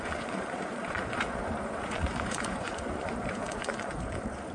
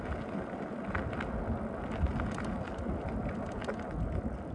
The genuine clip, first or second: second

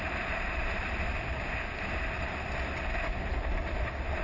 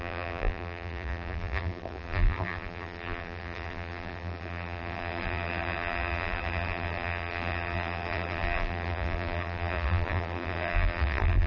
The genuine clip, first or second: first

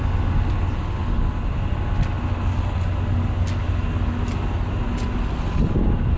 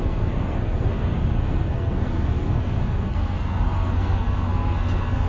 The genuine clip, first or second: first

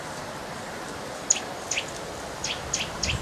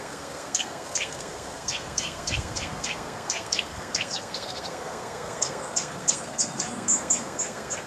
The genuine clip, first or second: first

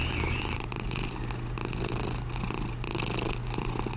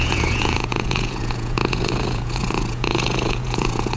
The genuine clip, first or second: first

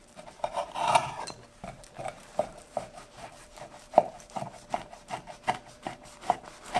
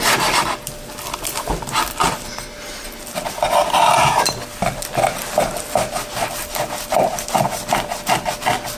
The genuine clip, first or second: second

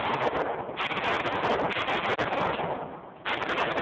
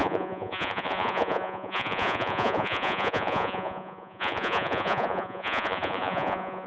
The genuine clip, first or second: first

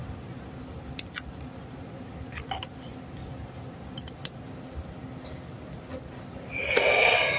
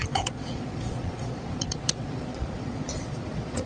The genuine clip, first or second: first